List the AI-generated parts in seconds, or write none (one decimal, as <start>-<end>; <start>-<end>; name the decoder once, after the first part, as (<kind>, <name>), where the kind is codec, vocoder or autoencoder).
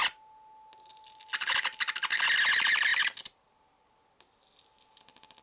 none